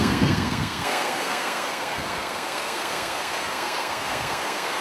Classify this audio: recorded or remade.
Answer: remade